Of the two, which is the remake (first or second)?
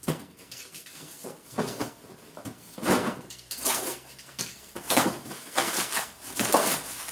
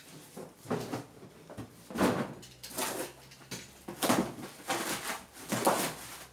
first